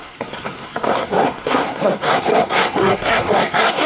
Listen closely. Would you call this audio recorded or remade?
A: remade